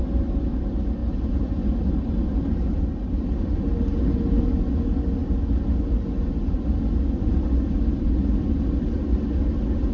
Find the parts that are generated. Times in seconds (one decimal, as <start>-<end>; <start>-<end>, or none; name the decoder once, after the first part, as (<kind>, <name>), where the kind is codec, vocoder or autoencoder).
none